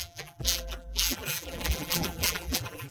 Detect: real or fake fake